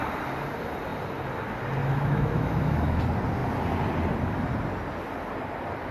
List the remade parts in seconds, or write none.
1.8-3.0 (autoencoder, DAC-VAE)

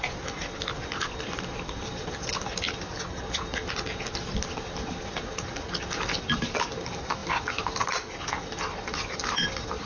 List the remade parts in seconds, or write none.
none

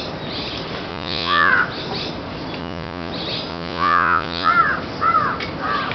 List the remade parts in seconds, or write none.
0.9-1.5 (vocoder, Vocos); 2.6-3.1; 3.5-4.5

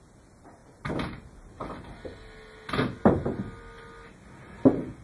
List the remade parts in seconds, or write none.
none

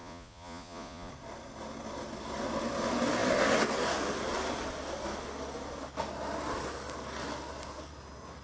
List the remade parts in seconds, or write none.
0.0-1.1 (vocoder, Vocos)